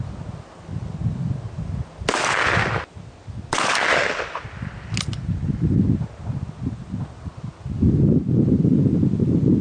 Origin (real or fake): real